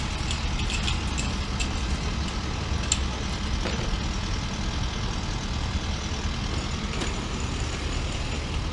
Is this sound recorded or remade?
recorded